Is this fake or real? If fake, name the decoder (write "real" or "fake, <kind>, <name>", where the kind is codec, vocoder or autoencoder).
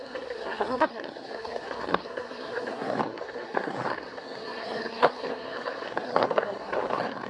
fake, codec, SNAC